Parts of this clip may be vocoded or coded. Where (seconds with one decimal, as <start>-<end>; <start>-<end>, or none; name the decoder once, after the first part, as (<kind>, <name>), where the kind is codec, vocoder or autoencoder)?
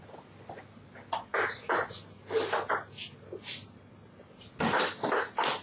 none